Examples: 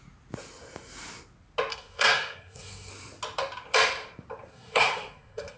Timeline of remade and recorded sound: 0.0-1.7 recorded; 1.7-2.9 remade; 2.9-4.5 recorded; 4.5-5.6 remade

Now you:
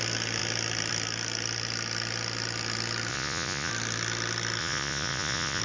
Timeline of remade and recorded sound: 0.0-3.1 recorded; 3.1-3.7 remade; 3.7-4.6 recorded; 4.6-5.6 remade

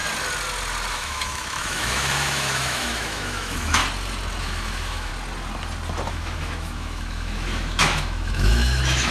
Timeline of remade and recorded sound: 0.0-0.9 recorded; 0.9-3.8 remade; 3.8-4.4 recorded; 4.4-5.1 remade; 5.1-6.1 recorded; 6.1-9.1 remade

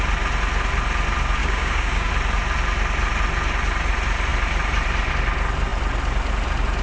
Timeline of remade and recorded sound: 0.0-1.4 recorded; 1.4-2.1 remade; 2.1-6.8 recorded

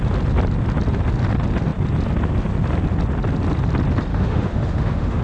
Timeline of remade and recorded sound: 0.0-4.1 recorded; 4.1-5.2 remade